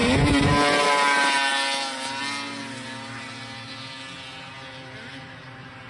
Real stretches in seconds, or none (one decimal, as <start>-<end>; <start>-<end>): 0.5-5.9